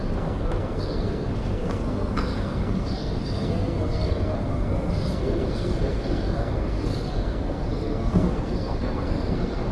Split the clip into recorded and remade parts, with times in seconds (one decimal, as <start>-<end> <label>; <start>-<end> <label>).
0.0-9.7 remade